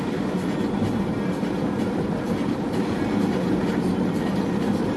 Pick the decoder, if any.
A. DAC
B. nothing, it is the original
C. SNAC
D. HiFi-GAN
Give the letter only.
B